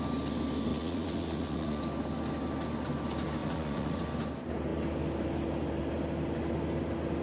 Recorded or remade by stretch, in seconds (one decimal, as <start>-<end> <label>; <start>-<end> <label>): 0.0-0.7 recorded; 0.7-1.8 remade; 1.8-3.4 recorded; 3.4-4.0 remade; 4.0-7.2 recorded